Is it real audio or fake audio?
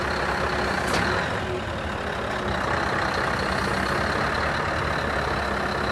real